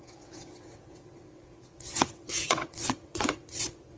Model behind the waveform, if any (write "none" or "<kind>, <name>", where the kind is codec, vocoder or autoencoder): vocoder, WaveNeXt